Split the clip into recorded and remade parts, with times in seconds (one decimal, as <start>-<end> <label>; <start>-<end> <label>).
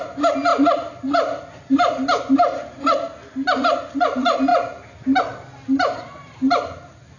0.0-7.2 recorded